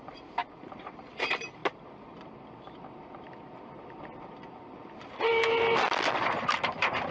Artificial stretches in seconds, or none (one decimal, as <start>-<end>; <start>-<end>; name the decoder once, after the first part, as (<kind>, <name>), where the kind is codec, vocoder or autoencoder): 0.4-1.0 (vocoder, BigVGAN v2)